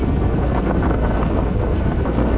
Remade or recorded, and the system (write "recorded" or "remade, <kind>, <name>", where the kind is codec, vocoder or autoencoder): remade, codec, SNAC